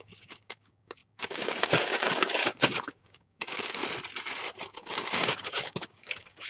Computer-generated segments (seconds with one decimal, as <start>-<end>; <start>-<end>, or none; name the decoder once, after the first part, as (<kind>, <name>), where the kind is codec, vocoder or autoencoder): 0.0-3.8 (codec, DAC); 4.7-6.5